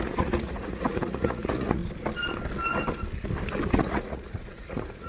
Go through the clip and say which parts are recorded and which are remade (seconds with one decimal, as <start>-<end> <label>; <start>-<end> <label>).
0.0-1.8 remade; 1.8-3.7 recorded; 3.7-5.1 remade